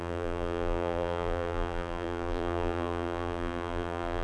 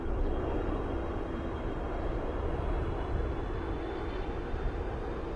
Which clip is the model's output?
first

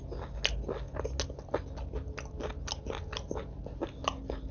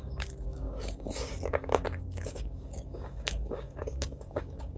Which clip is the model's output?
second